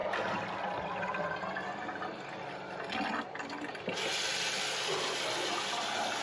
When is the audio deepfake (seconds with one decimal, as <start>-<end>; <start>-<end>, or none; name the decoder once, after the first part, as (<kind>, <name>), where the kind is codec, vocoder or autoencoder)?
none